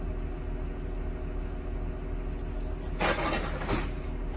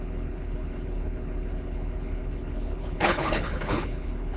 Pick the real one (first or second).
first